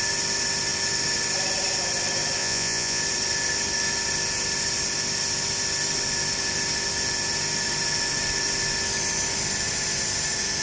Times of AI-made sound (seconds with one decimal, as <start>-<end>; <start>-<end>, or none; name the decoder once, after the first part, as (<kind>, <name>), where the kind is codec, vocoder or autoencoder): 2.4-3.0 (vocoder, Vocos)